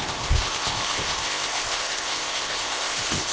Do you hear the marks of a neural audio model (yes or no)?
yes